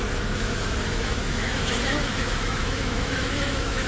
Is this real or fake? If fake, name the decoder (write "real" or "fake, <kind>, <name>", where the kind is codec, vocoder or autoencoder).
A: fake, autoencoder, DAC-VAE